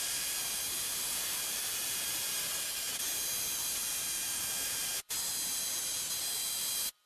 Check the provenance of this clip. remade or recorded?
remade